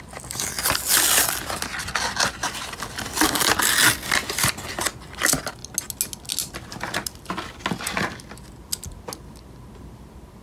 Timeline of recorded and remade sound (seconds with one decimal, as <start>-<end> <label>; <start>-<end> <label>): 0.0-10.4 recorded